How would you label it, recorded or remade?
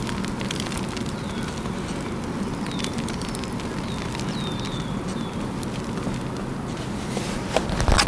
recorded